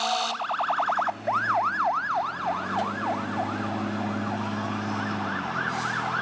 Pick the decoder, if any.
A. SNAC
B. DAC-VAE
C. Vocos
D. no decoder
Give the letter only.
D